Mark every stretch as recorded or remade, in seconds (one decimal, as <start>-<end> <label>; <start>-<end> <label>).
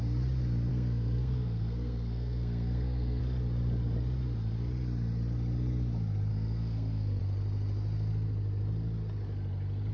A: 0.0-0.7 recorded; 0.7-3.2 remade; 3.2-6.3 recorded; 6.3-7.2 remade; 7.2-9.9 recorded